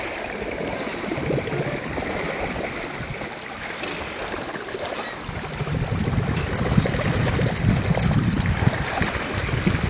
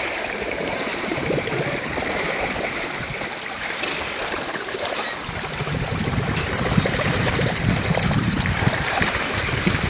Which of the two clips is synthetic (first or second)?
second